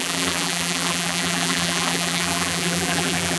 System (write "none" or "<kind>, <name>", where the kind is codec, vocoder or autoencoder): vocoder, BigVGAN v2